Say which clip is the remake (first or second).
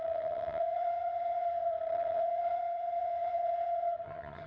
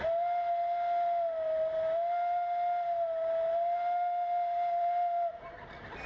first